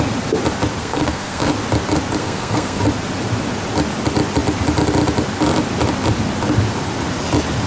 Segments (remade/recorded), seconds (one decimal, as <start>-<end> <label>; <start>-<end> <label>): 0.0-0.8 recorded; 0.8-1.5 remade; 1.5-2.2 recorded; 2.2-2.8 remade; 2.8-7.7 recorded